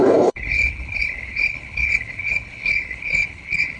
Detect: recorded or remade remade